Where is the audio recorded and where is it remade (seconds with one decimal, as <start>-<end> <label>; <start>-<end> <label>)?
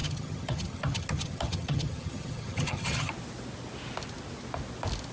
0.0-3.1 remade; 3.1-5.1 recorded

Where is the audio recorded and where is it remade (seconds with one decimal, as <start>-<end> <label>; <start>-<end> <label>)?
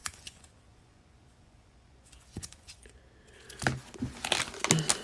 0.0-3.0 remade; 3.0-5.0 recorded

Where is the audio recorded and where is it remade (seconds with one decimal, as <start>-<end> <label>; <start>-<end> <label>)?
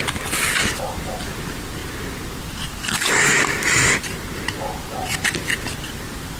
0.0-2.8 recorded; 2.8-3.6 remade; 3.6-6.4 recorded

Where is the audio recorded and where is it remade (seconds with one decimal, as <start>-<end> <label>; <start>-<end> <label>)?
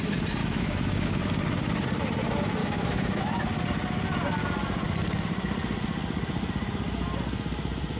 0.0-0.4 recorded; 0.4-1.2 remade; 1.2-2.6 recorded; 2.6-3.2 remade; 3.2-8.0 recorded